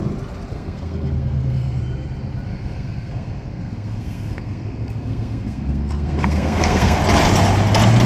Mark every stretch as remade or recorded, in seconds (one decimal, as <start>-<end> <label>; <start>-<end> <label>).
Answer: 0.0-0.5 recorded; 0.5-1.8 remade; 1.8-2.5 recorded; 2.5-7.0 remade; 7.0-8.1 recorded